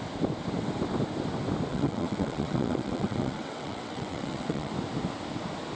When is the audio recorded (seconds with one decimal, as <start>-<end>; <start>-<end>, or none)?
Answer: 0.0-1.7; 4.7-5.8